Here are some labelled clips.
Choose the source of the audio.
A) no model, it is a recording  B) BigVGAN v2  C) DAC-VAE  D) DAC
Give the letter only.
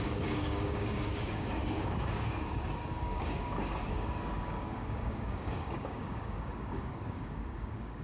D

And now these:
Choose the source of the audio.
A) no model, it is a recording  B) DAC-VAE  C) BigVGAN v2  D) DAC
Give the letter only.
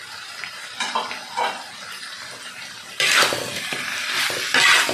A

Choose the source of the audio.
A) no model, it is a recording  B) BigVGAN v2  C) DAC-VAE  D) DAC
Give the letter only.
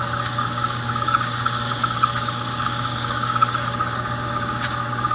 D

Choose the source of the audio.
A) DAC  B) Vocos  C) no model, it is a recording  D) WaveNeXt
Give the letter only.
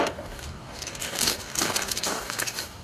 A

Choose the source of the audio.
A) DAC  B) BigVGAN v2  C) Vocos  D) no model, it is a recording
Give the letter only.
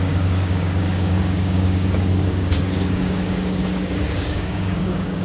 A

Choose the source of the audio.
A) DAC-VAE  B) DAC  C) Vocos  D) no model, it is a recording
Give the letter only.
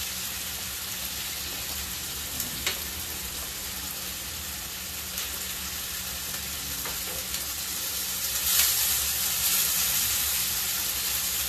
D